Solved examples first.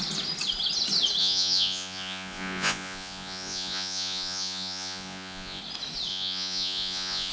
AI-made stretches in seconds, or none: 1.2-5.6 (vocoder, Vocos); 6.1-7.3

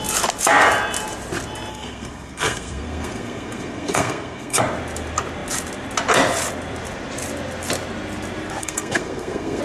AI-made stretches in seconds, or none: 1.7-4.6 (codec, SNAC); 8.6-9.6

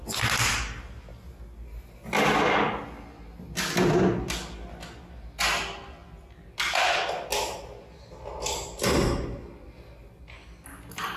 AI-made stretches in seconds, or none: none

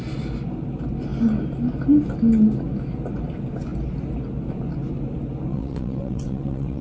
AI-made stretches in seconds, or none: 5.5-6.8 (vocoder, WaveNeXt)

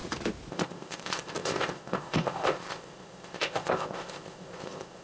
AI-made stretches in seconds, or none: 0.5-5.0 (codec, ZipCodec)

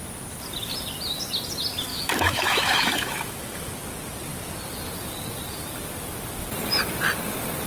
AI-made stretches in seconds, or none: 1.9-3.7 (autoencoder, DAC-VAE)

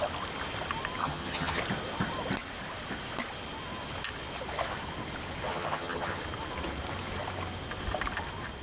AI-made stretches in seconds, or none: 1.0-1.6 (vocoder, HiFi-GAN); 5.5-6.2

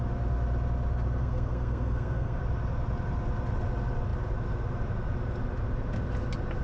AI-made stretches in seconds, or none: 1.2-2.4 (codec, SNAC)